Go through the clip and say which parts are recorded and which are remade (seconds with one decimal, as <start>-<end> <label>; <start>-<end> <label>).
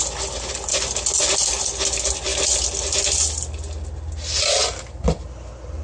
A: 0.0-5.8 recorded